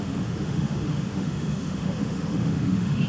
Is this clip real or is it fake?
fake